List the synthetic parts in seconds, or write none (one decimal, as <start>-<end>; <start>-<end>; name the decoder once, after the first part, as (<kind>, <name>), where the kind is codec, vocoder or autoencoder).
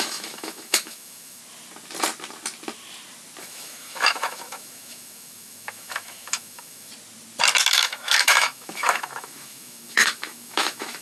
0.0-1.4 (autoencoder, DAC-VAE); 3.4-6.9; 7.7-11.0